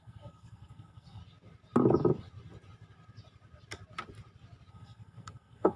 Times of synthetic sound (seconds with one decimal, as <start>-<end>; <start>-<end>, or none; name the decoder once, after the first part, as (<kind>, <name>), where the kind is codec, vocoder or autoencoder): 0.0-1.2 (codec, SNAC); 4.7-5.8